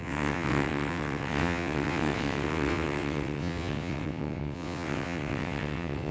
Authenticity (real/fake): fake